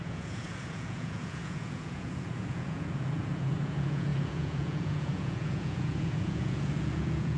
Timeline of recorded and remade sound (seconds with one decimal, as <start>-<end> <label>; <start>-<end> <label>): 0.0-7.4 remade